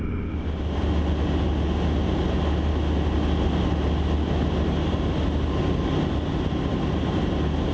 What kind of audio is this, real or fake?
real